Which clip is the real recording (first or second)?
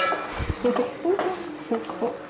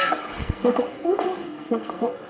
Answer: first